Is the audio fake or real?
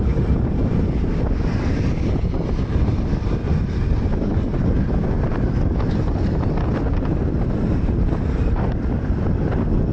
real